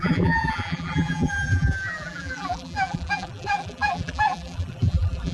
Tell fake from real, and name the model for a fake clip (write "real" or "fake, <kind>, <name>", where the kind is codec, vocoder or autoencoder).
fake, vocoder, BigVGAN v2